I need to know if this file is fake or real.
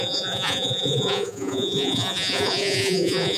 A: fake